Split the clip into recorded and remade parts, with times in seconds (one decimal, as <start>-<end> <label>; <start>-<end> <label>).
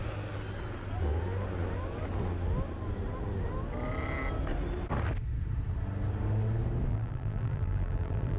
0.0-6.9 recorded; 6.9-8.4 remade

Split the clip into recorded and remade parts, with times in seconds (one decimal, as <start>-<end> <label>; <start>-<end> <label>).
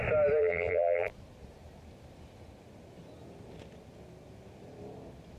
0.0-0.4 recorded; 0.4-1.1 remade; 1.1-5.4 recorded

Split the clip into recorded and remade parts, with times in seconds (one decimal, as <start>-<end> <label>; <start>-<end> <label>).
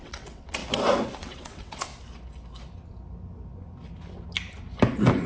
0.0-0.6 remade; 0.6-1.2 recorded; 1.2-1.9 remade; 1.9-5.3 recorded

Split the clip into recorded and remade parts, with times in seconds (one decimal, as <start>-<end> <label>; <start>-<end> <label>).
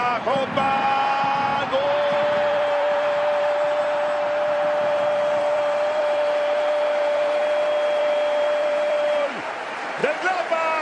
0.0-7.4 remade; 7.4-8.0 recorded; 8.0-10.0 remade; 10.0-10.8 recorded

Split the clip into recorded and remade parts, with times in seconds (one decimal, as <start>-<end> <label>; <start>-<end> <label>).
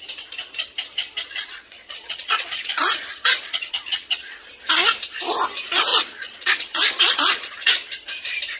0.0-1.2 recorded; 1.2-4.5 remade; 4.5-5.9 recorded; 5.9-7.7 remade; 7.7-8.6 recorded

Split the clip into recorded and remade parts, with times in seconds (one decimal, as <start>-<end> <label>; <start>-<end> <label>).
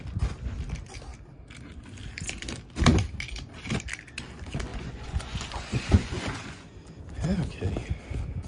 0.0-4.7 recorded; 4.7-6.7 remade; 6.7-8.5 recorded